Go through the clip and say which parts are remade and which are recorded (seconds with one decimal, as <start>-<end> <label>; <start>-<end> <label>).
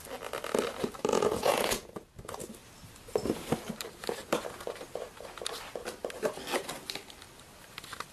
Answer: 0.0-1.1 recorded; 1.1-2.1 remade; 2.1-8.1 recorded